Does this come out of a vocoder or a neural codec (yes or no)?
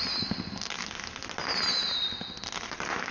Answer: no